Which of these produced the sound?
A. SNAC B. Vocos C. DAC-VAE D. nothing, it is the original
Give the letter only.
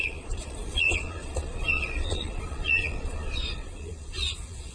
B